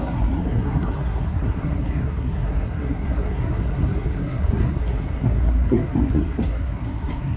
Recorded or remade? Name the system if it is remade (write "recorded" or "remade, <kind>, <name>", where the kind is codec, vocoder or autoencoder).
remade, codec, SNAC